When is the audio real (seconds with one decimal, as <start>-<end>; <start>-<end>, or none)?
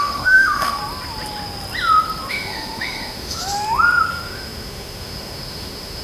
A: 0.8-2.3; 3.4-4.1